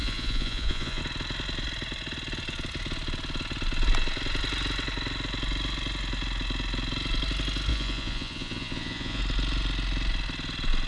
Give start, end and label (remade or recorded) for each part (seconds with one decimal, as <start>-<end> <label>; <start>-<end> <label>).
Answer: 0.0-1.0 remade; 1.0-7.7 recorded; 7.7-9.2 remade; 9.2-10.9 recorded